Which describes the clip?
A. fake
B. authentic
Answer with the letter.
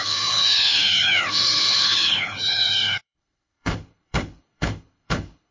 A